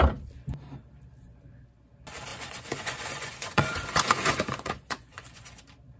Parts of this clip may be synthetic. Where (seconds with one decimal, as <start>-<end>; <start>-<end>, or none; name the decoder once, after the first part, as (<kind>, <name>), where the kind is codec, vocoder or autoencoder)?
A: 2.3-5.6 (vocoder, Vocos)